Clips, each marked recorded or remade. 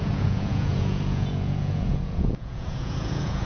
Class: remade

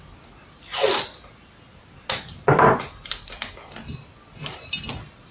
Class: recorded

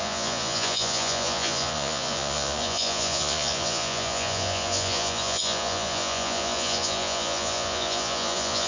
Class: remade